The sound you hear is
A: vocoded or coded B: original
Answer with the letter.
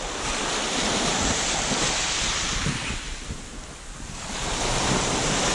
B